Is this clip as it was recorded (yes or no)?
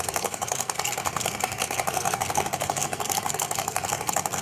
no